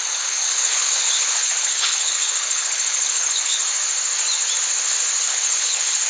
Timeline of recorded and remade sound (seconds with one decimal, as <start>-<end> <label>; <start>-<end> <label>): 0.0-3.6 remade; 3.6-5.2 recorded; 5.2-6.1 remade